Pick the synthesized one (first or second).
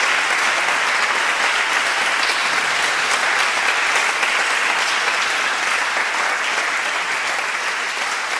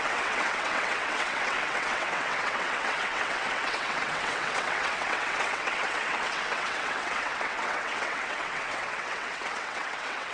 second